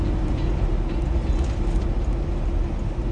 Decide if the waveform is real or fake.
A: real